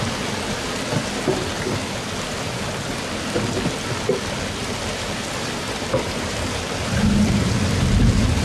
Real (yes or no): no